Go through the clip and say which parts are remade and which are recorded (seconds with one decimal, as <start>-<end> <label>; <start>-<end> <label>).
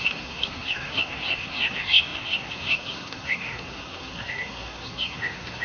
0.0-5.6 remade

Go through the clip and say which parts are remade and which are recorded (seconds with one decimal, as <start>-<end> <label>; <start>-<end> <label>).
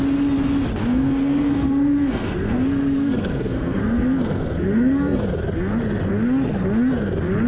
0.0-0.9 recorded; 0.9-5.2 remade; 5.2-7.5 recorded